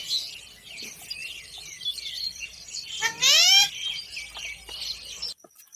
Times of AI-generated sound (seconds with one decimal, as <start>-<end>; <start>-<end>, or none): 1.2-4.0